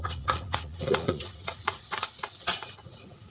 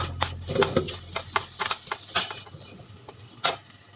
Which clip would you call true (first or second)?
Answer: second